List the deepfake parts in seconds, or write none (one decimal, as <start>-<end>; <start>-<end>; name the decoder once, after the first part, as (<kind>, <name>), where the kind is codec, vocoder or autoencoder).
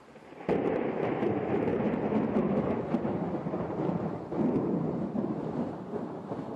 none